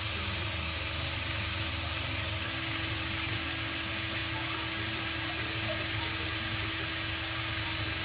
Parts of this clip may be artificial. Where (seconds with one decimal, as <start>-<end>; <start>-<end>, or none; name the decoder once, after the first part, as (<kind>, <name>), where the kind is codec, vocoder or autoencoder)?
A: none

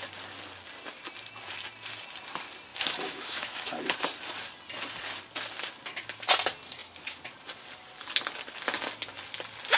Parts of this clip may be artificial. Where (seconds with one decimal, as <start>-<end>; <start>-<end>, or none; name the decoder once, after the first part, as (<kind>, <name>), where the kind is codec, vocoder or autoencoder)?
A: 2.7-3.7 (autoencoder, DAC-VAE)

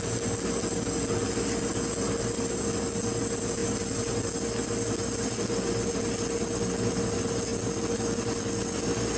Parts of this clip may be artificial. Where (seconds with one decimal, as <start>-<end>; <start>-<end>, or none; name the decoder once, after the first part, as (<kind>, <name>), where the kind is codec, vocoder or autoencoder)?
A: none

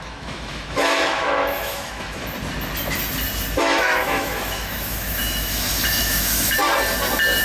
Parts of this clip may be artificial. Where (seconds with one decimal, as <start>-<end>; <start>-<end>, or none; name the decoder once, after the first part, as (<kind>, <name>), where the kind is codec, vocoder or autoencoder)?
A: 0.0-2.2 (autoencoder, DAC-VAE); 3.6-6.6